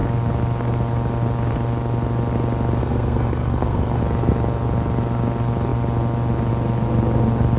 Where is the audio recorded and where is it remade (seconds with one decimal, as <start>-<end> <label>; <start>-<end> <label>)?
0.0-2.8 recorded; 2.8-4.0 remade; 4.0-7.6 recorded